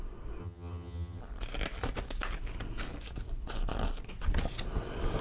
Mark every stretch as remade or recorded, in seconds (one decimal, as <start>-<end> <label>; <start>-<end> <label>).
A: 0.0-0.4 recorded; 0.4-1.2 remade; 1.2-5.2 recorded